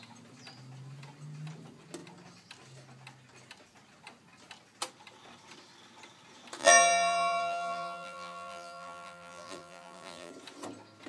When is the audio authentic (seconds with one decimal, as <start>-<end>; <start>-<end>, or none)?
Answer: 0.0-6.6; 10.3-11.1